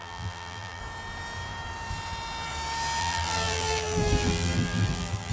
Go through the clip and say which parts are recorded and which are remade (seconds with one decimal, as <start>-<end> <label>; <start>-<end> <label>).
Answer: 0.0-0.8 remade; 0.8-3.0 recorded; 3.0-5.3 remade